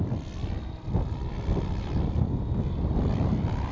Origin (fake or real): real